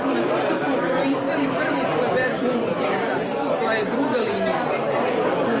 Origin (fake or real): real